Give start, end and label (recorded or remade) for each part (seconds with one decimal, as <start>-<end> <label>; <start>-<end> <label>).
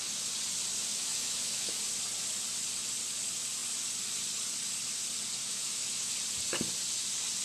0.0-0.9 recorded; 0.9-1.8 remade; 1.8-5.4 recorded; 5.4-6.1 remade; 6.1-7.4 recorded